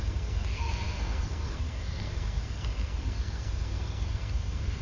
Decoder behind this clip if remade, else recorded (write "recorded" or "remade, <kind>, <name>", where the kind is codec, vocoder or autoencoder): remade, codec, SNAC